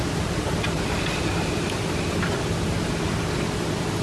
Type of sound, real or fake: real